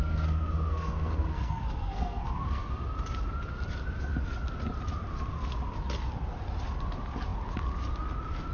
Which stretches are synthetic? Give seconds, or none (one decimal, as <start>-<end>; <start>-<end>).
0.0-2.7